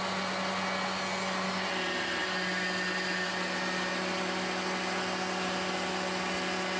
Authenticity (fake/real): real